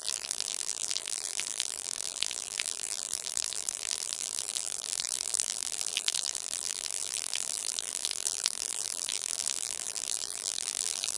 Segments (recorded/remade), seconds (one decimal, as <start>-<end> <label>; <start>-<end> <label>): 0.0-11.2 remade